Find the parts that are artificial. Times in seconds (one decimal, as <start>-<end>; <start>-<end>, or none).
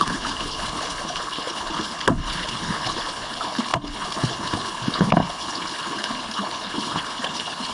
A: 0.0-7.7